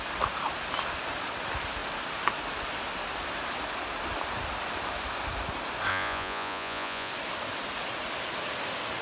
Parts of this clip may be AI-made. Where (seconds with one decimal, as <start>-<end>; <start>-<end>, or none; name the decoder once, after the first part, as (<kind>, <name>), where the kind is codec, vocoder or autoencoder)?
5.9-7.1 (vocoder, Vocos)

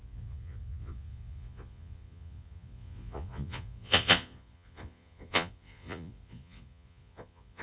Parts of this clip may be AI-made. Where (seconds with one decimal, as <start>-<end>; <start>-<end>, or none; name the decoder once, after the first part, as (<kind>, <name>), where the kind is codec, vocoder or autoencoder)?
0.0-7.6 (vocoder, Vocos)

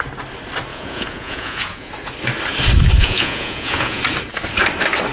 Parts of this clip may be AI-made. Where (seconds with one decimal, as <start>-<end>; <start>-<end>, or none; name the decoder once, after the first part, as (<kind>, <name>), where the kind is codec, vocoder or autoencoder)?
0.7-1.9 (vocoder, Vocos); 3.0-4.0

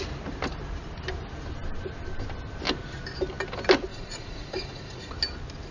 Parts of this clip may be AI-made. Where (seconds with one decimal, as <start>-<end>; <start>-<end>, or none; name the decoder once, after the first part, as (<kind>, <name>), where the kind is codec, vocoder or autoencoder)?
3.9-5.1 (vocoder, Vocos)